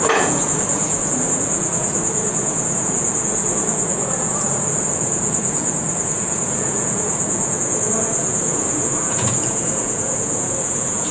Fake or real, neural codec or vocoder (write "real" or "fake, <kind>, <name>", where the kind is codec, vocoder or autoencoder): fake, vocoder, Vocos